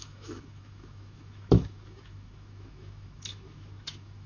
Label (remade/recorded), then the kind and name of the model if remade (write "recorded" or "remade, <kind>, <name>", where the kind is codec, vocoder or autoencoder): remade, autoencoder, DAC-VAE